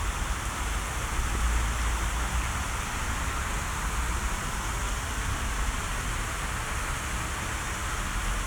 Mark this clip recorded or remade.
recorded